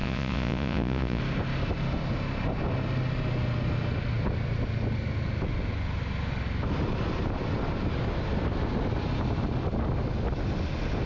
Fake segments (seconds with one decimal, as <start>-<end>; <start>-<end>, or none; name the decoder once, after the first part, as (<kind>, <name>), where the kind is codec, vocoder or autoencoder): 0.0-1.2 (vocoder, Vocos)